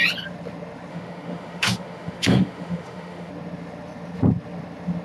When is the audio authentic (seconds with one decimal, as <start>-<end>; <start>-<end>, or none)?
0.0-0.9; 3.3-5.0